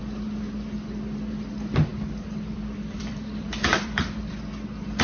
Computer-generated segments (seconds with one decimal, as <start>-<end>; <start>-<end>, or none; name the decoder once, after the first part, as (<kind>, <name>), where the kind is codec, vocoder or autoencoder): 1.9-4.3 (vocoder, BigVGAN v2)